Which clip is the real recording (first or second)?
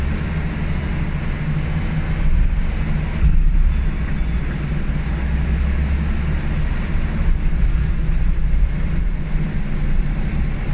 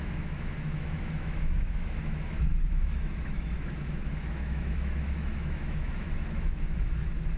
first